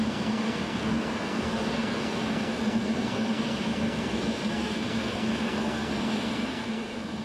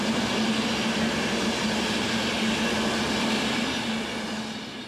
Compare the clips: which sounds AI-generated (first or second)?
first